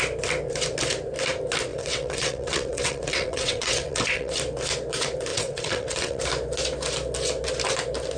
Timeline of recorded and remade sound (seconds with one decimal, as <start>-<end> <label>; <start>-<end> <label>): 0.0-1.7 recorded; 1.7-4.3 remade; 4.3-5.3 recorded; 5.3-6.2 remade; 6.2-8.2 recorded